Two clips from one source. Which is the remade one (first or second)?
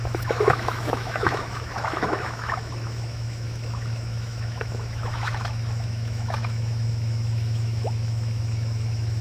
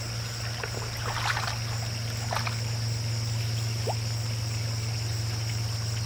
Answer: first